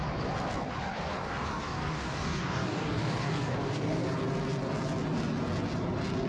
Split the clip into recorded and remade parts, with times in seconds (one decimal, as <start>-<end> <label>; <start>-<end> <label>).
0.0-1.1 recorded; 1.1-4.0 remade; 4.0-6.3 recorded